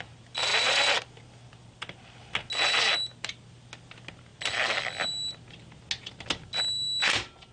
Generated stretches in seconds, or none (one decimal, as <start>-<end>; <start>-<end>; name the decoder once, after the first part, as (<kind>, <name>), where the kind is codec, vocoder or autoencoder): none